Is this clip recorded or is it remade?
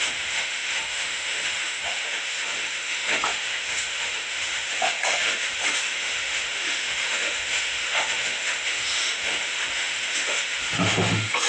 remade